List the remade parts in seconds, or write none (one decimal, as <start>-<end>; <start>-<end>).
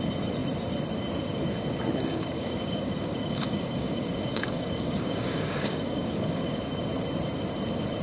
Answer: 2.1-6.6